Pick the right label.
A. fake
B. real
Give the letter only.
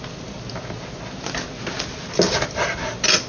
B